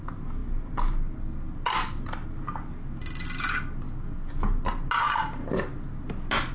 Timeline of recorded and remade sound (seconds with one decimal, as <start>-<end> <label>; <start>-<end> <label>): 0.0-6.5 recorded